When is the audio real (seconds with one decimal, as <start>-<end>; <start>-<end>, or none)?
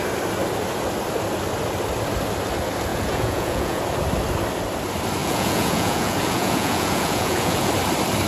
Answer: 0.0-2.9; 3.8-5.2; 7.7-8.3